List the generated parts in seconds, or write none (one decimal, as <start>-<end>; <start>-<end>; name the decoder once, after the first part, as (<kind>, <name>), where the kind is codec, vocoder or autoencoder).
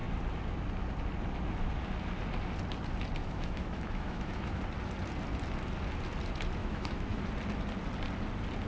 3.2-4.6 (autoencoder, DAC-VAE); 6.6-7.2